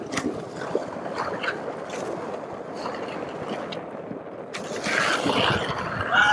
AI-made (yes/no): no